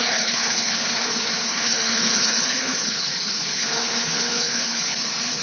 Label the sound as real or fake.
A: fake